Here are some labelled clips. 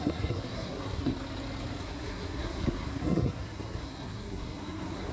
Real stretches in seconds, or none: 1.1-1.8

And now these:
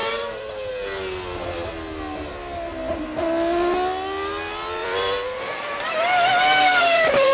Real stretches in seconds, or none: 0.0-4.8; 6.3-6.7

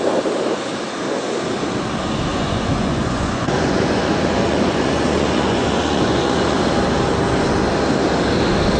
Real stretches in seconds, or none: 0.0-2.3; 6.6-8.8

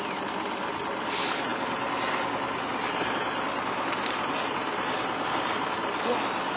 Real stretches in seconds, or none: 0.0-6.6